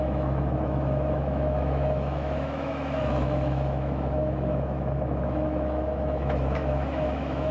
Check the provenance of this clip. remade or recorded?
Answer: remade